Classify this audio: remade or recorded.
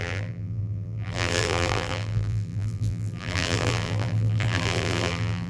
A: remade